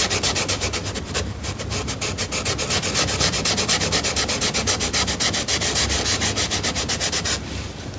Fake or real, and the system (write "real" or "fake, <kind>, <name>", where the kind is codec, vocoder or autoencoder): real